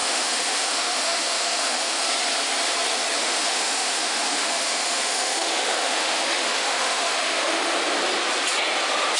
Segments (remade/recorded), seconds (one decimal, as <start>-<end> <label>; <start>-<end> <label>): 0.0-2.0 remade; 2.0-3.2 recorded; 3.2-7.7 remade; 7.7-9.2 recorded